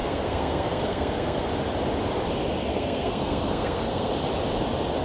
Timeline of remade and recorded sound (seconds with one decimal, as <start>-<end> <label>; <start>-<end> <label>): 0.0-1.5 remade; 1.5-2.7 recorded; 2.7-4.1 remade; 4.1-5.0 recorded